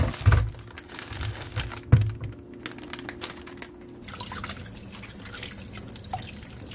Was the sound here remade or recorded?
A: recorded